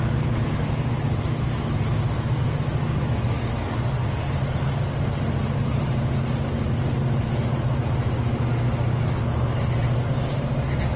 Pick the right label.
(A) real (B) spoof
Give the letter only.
A